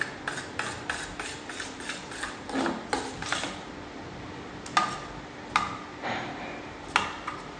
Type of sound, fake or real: real